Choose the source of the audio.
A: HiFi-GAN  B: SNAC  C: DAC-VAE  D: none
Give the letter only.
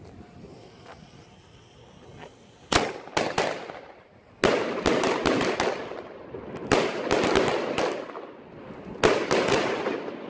D